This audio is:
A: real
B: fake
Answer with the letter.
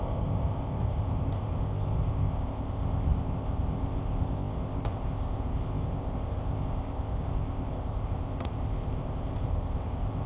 B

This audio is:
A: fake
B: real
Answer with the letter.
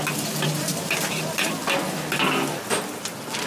B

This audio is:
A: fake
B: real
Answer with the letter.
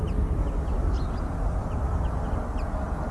B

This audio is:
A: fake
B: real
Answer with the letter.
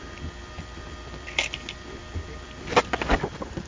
B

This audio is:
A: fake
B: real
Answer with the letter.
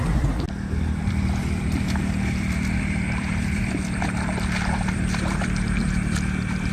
A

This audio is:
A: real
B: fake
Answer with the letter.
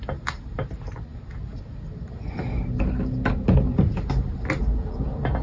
A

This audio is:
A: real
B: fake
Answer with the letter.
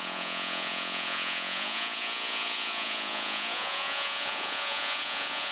B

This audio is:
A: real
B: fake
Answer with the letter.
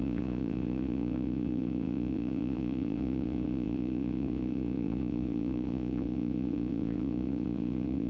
B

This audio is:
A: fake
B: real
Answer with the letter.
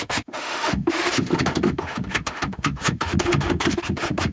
A